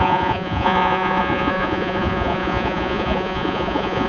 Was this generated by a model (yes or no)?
yes